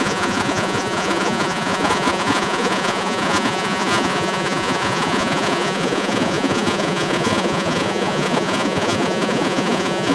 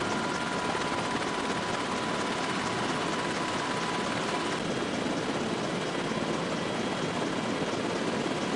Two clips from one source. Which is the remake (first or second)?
first